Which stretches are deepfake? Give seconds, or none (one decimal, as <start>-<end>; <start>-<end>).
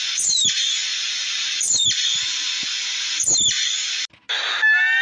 none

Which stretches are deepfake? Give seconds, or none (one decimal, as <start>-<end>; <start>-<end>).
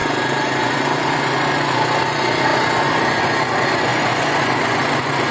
0.0-5.3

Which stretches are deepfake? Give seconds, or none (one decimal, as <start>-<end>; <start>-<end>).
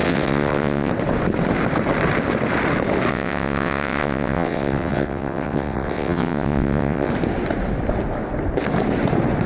0.0-0.9; 3.1-7.1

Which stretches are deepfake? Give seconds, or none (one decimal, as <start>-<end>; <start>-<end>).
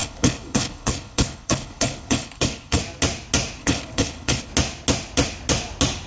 0.0-2.8; 3.6-4.5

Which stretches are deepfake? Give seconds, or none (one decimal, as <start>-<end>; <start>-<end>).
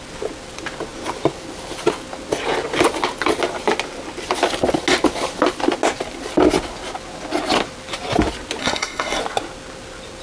8.6-9.2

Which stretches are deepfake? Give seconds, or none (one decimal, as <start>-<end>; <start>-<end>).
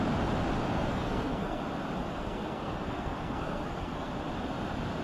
0.7-1.6; 2.1-4.1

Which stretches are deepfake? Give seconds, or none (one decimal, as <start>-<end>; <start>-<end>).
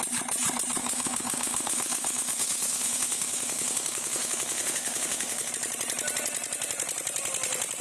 0.8-5.5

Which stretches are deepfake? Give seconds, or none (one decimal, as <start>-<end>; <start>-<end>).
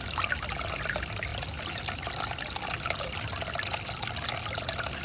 none